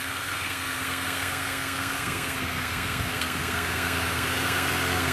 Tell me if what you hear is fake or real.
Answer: fake